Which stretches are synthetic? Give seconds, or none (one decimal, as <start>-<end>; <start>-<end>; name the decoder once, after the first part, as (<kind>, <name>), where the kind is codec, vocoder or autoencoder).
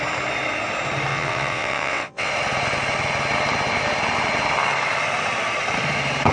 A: 1.1-2.3 (vocoder, WaveNeXt)